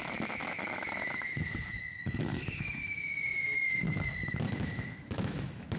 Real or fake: fake